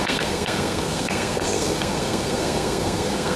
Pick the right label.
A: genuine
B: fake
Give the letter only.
B